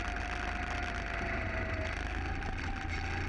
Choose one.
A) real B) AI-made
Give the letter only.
A